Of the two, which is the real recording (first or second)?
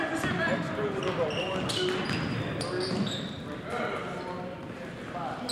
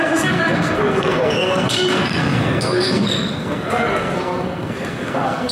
first